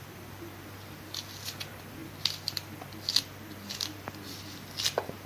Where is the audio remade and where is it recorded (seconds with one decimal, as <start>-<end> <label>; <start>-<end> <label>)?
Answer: 0.0-5.3 recorded